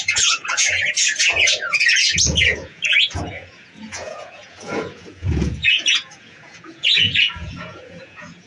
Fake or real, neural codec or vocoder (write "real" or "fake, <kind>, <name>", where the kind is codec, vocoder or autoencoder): fake, vocoder, Vocos